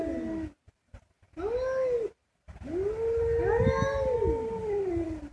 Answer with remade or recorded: recorded